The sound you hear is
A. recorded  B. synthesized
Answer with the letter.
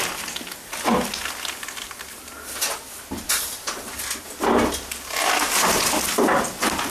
A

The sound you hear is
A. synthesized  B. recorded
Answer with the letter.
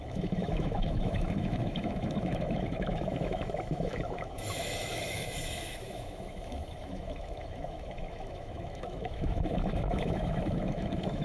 A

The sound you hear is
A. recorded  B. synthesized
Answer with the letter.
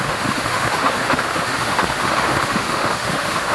B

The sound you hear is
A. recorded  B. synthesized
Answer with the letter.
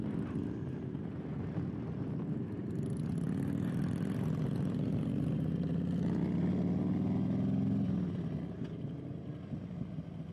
A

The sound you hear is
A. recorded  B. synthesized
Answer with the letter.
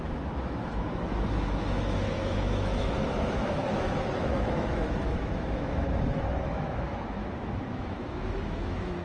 B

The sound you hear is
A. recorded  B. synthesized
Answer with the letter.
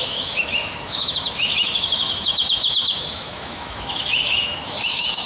B